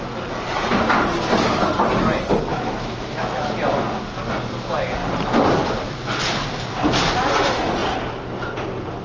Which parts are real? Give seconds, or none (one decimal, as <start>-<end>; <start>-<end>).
0.0-2.5; 3.5-9.0